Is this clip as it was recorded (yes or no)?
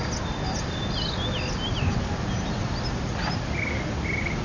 yes